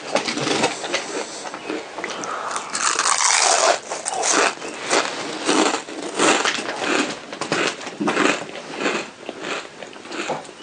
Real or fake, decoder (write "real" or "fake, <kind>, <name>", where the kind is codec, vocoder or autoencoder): real